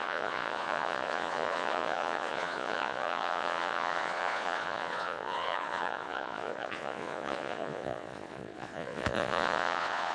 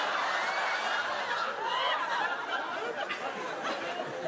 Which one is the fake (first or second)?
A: first